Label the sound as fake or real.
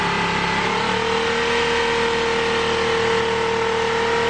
real